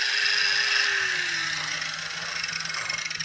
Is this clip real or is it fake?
real